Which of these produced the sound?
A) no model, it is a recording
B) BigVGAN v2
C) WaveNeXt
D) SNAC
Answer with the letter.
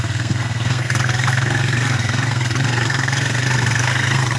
D